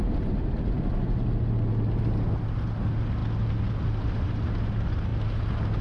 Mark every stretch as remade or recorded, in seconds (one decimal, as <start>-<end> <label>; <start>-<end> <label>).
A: 0.0-5.8 recorded